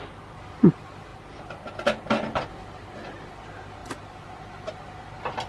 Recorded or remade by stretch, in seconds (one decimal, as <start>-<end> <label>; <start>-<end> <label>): 0.0-5.5 recorded